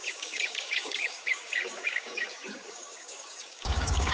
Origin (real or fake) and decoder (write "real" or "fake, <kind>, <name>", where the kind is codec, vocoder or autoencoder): fake, codec, DAC